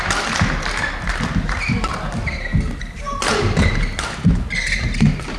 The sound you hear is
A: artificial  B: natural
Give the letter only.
B